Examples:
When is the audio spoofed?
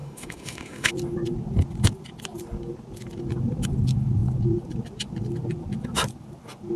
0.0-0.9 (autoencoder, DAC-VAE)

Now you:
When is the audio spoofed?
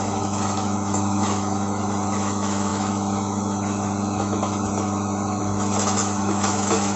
0.0-7.0 (autoencoder, DAC-VAE)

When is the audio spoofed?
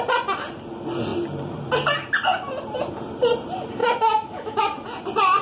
3.8-4.6 (autoencoder, DAC-VAE)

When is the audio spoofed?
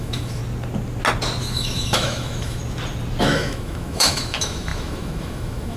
0.0-0.4 (autoencoder, DAC-VAE); 1.4-2.6; 3.2-5.8